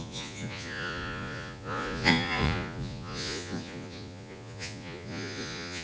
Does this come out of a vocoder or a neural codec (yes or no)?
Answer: yes